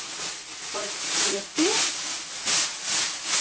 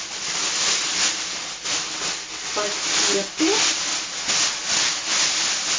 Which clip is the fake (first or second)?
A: first